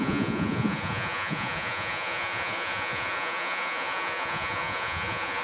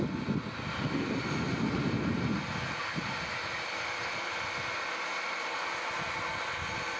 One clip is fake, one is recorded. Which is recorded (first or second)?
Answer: second